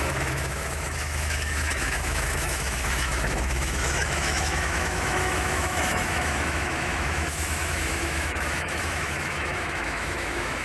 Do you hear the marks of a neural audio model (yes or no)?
yes